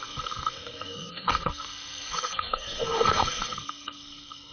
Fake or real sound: fake